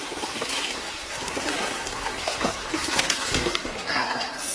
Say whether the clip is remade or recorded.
remade